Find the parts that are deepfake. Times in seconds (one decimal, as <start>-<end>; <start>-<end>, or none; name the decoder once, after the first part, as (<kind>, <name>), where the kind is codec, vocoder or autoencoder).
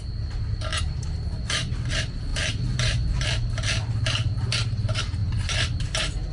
2.3-3.5 (vocoder, BigVGAN v2)